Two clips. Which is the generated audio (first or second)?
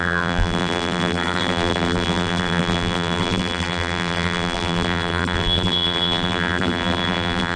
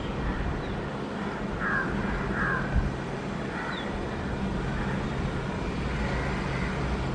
first